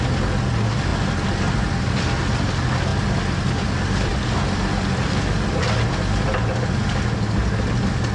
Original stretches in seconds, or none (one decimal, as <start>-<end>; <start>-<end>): 0.0-8.1